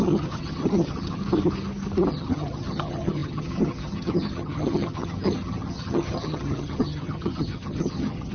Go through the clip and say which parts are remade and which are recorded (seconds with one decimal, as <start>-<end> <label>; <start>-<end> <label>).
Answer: 0.0-1.2 remade; 1.2-2.1 recorded; 2.1-8.3 remade